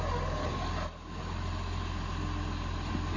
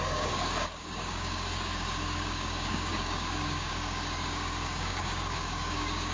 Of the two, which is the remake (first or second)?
second